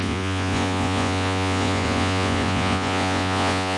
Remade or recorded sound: remade